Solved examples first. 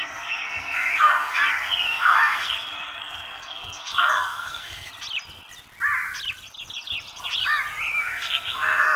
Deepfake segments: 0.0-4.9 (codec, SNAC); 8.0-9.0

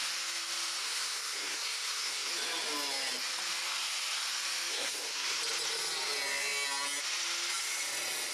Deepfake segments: 0.8-2.3 (codec, SNAC); 4.7-5.4

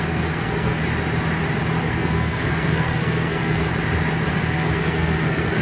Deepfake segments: 0.0-0.8 (codec, SNAC); 1.8-3.7; 4.3-5.6